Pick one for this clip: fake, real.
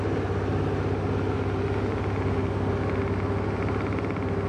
real